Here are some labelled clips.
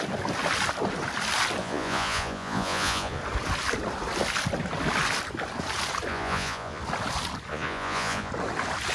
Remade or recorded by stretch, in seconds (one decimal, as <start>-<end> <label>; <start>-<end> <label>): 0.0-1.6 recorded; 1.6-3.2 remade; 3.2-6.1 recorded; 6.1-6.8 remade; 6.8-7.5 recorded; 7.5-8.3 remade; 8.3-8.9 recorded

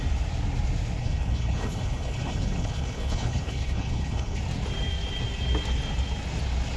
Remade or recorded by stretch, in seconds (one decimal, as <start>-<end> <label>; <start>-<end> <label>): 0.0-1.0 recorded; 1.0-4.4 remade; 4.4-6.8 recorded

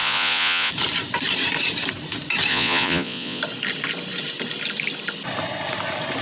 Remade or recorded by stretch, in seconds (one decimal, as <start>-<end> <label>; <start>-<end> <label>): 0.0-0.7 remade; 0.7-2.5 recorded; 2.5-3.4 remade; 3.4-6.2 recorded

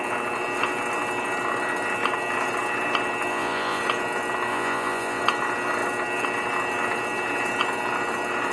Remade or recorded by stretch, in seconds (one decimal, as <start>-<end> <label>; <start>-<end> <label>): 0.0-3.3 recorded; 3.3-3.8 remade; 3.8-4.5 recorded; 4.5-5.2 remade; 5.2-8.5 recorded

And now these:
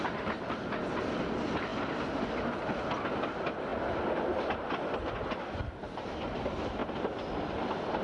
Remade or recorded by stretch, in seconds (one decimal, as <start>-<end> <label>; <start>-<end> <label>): 0.0-8.0 recorded

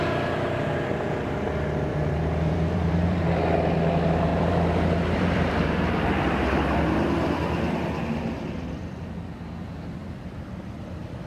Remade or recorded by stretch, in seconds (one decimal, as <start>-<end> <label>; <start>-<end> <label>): 0.0-1.9 recorded; 1.9-3.2 remade; 3.2-4.3 recorded; 4.3-6.8 remade; 6.8-11.3 recorded